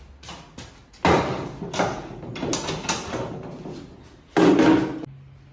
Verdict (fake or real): real